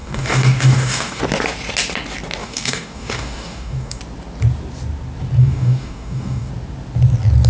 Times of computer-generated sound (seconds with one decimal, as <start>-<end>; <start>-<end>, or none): 0.0-1.2; 2.4-4.0; 5.4-6.5